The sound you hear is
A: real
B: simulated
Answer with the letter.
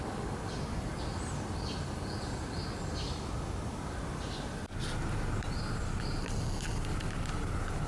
A